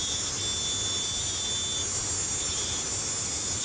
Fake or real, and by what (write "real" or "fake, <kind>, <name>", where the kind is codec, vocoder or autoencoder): real